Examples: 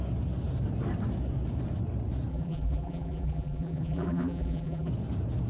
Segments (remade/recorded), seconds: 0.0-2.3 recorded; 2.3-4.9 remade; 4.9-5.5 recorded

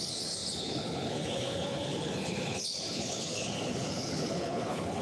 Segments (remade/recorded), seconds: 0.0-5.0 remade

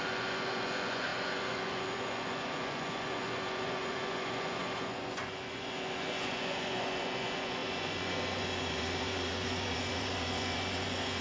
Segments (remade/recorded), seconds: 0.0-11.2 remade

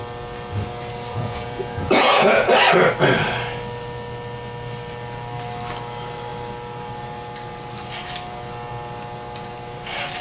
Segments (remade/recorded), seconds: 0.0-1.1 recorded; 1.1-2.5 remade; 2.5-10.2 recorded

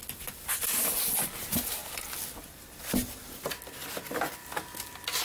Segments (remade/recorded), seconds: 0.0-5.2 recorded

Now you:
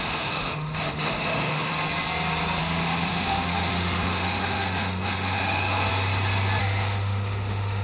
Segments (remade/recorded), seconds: 0.0-1.7 remade; 1.7-2.6 recorded; 2.6-5.9 remade; 5.9-6.6 recorded; 6.6-7.8 remade

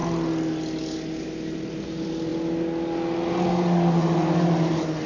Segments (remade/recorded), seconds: 0.0-5.1 recorded

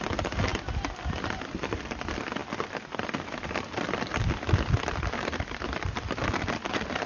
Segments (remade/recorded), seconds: 0.0-2.4 recorded; 2.4-6.3 remade; 6.3-7.1 recorded